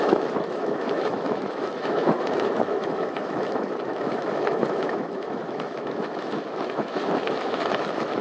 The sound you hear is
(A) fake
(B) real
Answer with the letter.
A